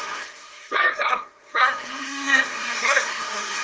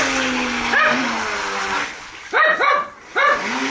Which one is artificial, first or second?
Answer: first